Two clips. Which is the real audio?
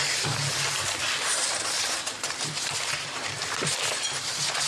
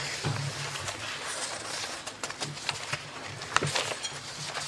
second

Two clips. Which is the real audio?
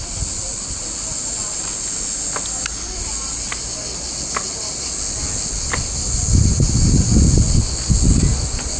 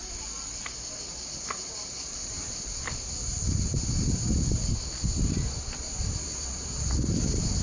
first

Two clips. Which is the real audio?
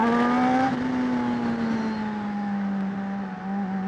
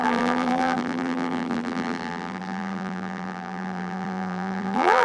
first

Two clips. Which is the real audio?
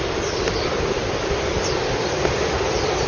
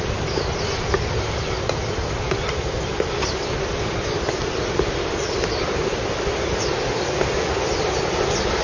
second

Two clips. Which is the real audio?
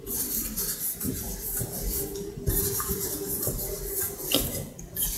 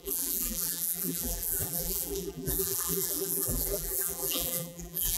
first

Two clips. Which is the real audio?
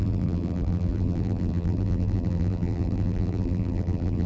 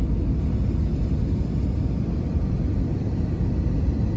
second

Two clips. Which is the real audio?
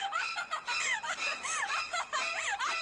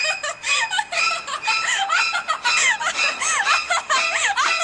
second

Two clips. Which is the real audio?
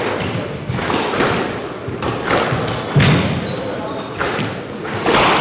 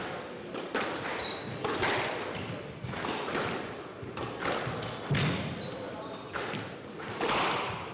first